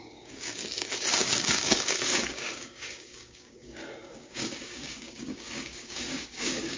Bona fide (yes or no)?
no